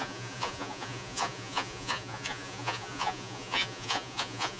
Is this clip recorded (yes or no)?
no